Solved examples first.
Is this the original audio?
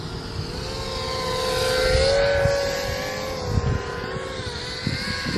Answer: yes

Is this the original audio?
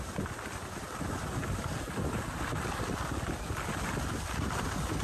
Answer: yes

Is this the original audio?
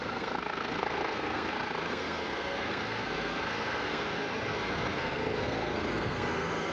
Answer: no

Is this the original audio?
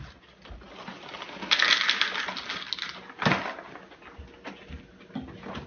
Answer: yes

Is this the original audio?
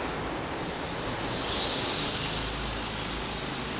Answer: yes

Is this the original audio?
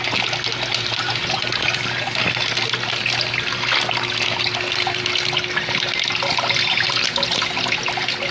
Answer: yes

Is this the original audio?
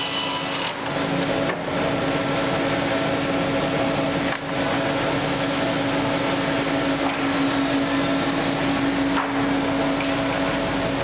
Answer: yes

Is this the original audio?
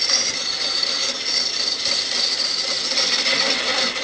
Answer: no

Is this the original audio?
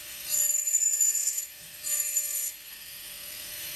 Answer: no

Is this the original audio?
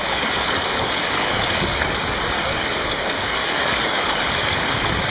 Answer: no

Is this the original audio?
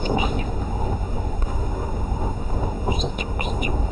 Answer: no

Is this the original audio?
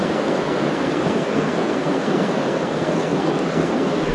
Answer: no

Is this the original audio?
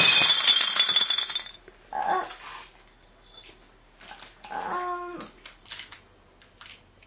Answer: yes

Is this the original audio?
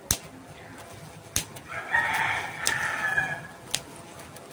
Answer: yes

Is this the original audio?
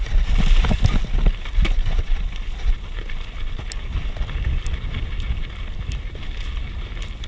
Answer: yes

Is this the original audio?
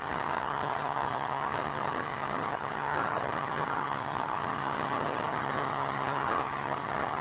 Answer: no